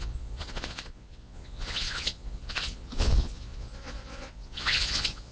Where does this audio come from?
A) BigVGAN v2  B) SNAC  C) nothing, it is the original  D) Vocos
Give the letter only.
D